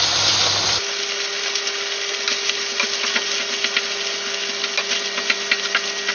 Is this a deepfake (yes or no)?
no